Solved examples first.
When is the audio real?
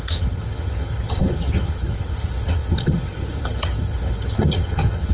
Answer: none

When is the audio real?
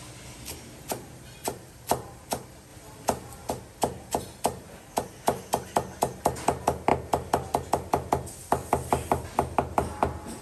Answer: 0.0-10.4